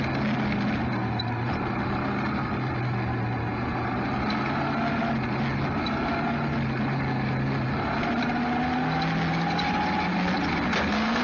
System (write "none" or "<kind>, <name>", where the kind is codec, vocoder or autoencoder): none